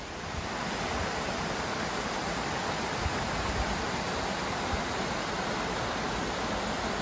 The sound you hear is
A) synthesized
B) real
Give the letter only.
B